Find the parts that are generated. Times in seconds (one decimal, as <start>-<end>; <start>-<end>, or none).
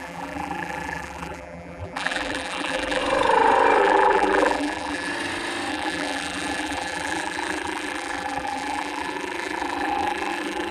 0.0-3.0; 3.8-5.1; 5.7-10.7